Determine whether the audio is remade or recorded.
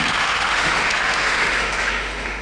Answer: remade